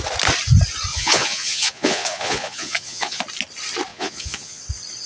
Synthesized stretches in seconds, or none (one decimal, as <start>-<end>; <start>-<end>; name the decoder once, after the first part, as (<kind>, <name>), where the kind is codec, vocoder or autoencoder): 0.9-3.2 (vocoder, Vocos); 3.9-4.6